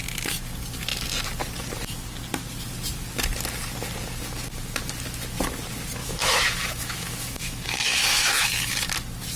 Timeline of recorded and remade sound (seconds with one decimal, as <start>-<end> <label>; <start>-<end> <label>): 0.0-6.0 recorded; 6.0-8.9 remade; 8.9-9.4 recorded